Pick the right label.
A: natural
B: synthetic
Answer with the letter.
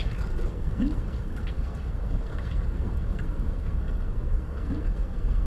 B